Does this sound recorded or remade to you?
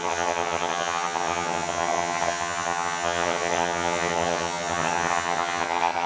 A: remade